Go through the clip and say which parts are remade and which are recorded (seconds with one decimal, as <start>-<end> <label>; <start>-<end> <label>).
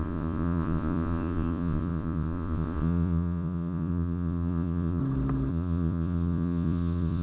0.0-5.0 remade; 5.0-5.5 recorded; 5.5-7.2 remade